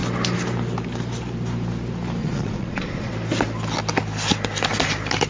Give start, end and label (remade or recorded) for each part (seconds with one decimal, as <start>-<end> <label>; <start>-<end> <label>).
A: 0.0-2.2 recorded; 2.2-3.1 remade; 3.1-5.3 recorded